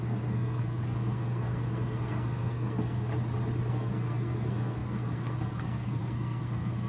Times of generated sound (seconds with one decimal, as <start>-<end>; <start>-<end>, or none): 0.0-3.1; 3.7-6.9

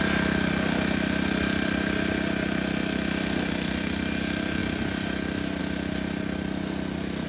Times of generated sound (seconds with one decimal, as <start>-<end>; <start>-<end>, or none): none

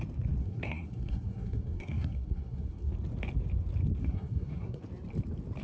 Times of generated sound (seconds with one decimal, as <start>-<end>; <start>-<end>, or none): 0.4-2.9; 4.0-4.8

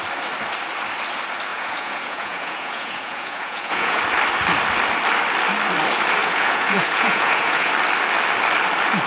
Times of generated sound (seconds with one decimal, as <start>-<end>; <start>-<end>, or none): 1.5-4.0; 6.2-7.7

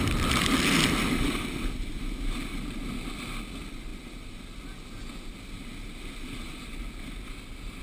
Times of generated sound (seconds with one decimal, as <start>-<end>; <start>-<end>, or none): none

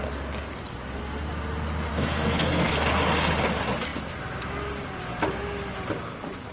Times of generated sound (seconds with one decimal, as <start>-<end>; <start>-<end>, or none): 1.9-2.7